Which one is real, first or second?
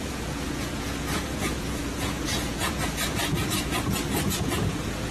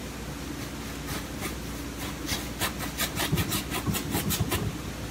second